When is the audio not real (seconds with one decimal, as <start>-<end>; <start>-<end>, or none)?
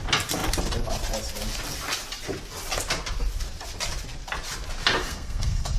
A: 5.0-5.8